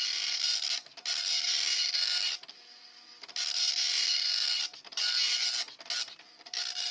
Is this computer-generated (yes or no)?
no